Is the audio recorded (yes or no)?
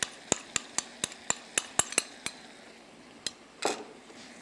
yes